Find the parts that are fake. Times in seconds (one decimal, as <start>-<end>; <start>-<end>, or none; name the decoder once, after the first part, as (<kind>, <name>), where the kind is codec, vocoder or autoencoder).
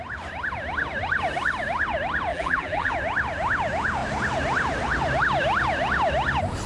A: 2.3-2.9 (vocoder, BigVGAN v2)